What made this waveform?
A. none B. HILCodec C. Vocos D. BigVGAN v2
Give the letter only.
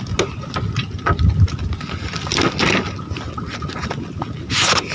A